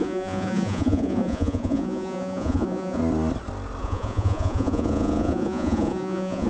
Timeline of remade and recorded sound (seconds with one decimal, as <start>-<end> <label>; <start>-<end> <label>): 0.0-3.0 remade; 3.0-3.8 recorded; 3.8-6.5 remade